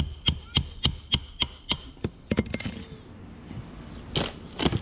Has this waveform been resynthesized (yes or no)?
no